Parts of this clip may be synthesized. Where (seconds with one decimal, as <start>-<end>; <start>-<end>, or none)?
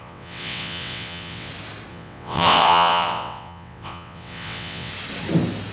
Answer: 0.0-1.5; 1.9-4.9